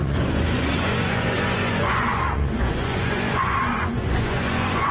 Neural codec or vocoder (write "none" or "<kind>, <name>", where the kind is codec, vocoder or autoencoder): vocoder, Vocos